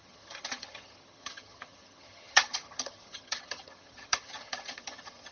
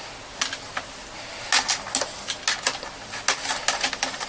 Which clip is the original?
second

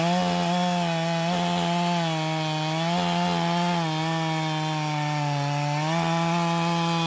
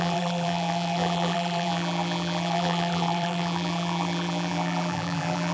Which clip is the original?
first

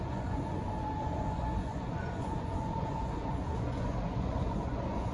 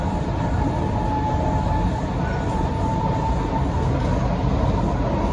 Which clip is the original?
second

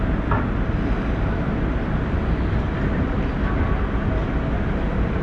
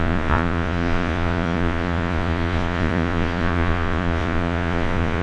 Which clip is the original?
first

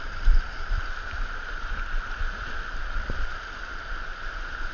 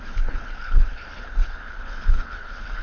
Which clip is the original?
first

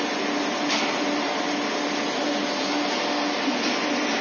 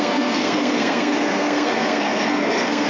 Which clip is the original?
first